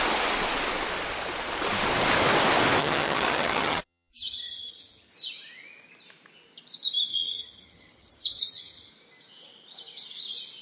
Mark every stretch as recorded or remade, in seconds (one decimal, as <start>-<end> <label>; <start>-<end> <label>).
0.0-2.8 recorded; 2.8-5.1 remade; 5.1-7.1 recorded; 7.1-8.9 remade; 8.9-10.6 recorded